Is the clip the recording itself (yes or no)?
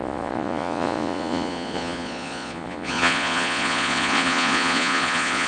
no